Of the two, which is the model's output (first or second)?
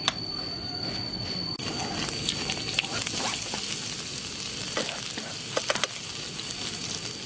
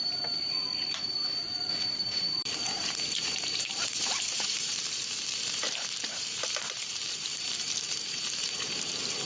second